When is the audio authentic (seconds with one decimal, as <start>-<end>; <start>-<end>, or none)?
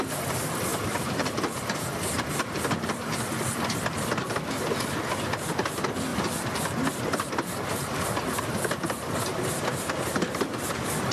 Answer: 0.0-0.7; 4.4-6.1; 10.7-11.1